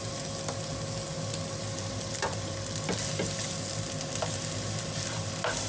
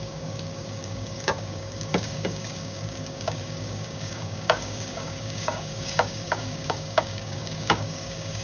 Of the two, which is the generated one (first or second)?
second